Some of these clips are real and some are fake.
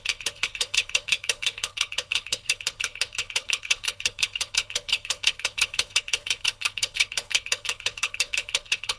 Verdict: fake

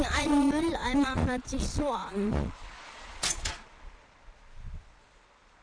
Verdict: fake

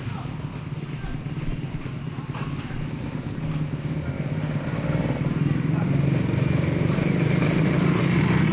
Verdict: real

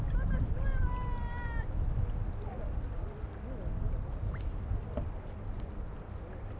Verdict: real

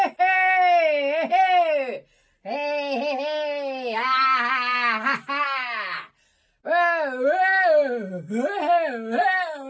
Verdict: real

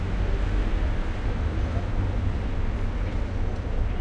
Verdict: real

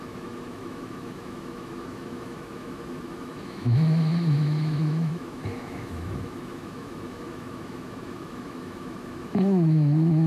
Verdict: fake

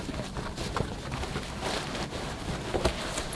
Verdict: real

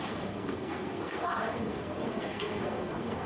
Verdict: fake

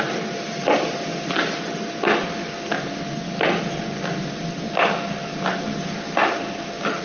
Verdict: real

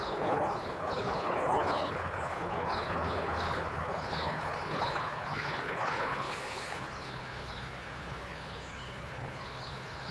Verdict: fake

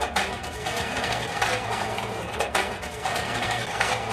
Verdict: fake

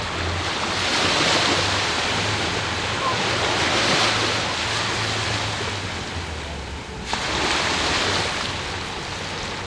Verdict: real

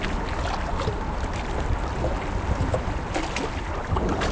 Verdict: real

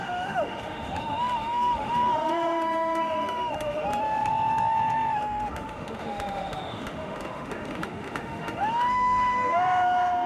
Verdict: fake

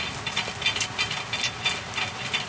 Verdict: real